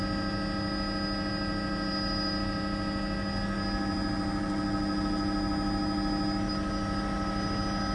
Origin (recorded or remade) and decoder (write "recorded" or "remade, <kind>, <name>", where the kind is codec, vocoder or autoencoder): recorded